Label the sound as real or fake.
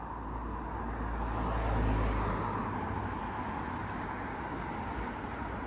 real